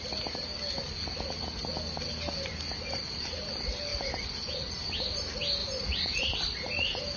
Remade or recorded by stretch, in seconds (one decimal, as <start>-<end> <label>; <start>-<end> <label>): 0.0-5.6 recorded; 5.6-6.2 remade; 6.2-7.2 recorded